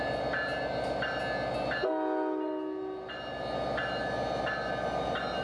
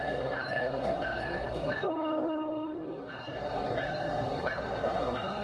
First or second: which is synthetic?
second